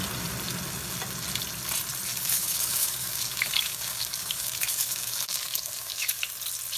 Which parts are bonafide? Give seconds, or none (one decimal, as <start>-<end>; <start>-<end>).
0.0-2.1; 6.2-6.8